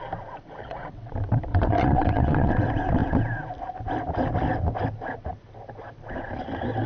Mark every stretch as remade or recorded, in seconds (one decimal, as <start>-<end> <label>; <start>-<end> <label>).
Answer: 0.0-0.6 recorded; 0.6-1.1 remade; 1.1-1.5 recorded; 1.5-2.5 remade; 2.5-6.9 recorded